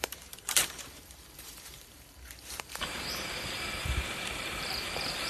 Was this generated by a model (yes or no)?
yes